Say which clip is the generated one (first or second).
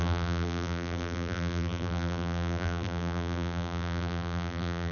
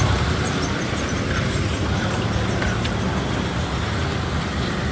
first